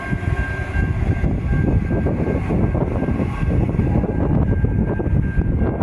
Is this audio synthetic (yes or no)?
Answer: no